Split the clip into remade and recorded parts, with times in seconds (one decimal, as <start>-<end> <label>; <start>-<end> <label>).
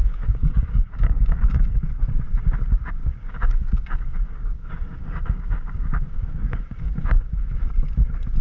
0.0-1.9 remade; 1.9-3.0 recorded; 3.0-7.5 remade; 7.5-8.4 recorded